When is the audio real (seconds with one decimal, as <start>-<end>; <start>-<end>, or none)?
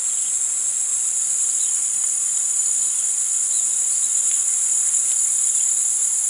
0.0-2.6; 4.6-6.3